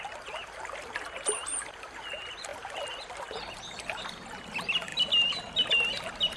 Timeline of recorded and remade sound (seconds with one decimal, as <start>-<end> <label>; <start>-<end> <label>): 0.0-6.4 recorded